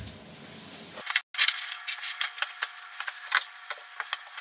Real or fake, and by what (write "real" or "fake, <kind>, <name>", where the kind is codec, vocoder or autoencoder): real